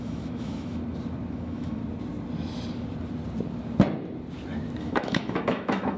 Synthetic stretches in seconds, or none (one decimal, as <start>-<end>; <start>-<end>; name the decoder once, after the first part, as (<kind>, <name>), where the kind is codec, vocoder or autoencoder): 0.0-0.8 (autoencoder, DAC-VAE); 1.3-1.8; 4.8-6.0